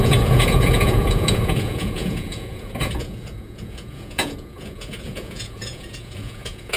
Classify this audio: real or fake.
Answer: fake